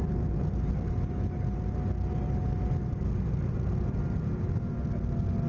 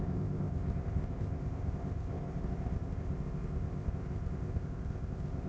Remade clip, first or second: second